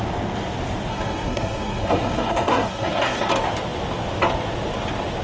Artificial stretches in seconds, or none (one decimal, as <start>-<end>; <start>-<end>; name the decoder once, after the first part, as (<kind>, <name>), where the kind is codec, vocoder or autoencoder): 0.9-3.3 (codec, SNAC)